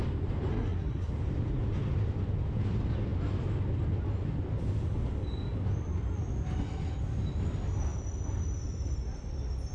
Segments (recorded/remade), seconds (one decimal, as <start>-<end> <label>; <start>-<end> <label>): 0.0-0.5 recorded; 0.5-1.1 remade; 1.1-9.7 recorded